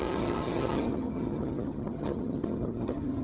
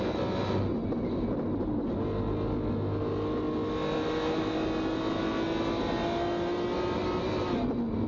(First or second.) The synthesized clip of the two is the first